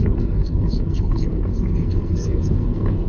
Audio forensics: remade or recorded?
remade